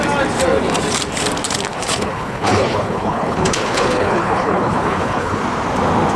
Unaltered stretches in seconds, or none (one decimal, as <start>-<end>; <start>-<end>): 0.0-1.7; 5.4-6.2